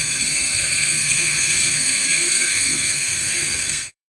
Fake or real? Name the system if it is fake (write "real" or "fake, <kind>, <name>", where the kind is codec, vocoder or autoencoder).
fake, codec, SNAC